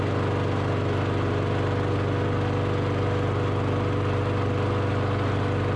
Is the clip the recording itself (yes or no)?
yes